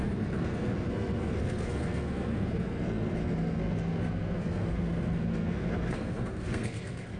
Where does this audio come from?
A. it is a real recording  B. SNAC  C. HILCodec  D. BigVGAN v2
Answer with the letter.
B